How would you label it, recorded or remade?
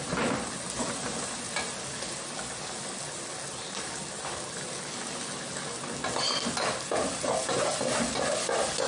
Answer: recorded